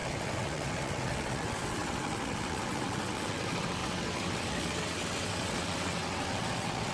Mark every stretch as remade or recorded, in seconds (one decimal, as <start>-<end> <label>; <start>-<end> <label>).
0.0-6.9 remade